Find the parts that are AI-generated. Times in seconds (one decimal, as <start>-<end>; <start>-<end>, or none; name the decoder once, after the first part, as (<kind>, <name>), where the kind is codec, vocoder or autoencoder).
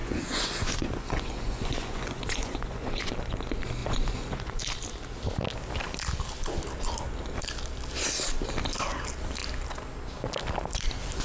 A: 0.0-3.1 (vocoder, Vocos); 3.8-4.6